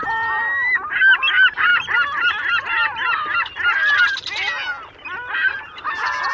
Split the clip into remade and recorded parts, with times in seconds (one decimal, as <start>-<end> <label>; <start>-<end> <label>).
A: 0.0-6.3 recorded